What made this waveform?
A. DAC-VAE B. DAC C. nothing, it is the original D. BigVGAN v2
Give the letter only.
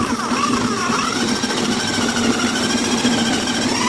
C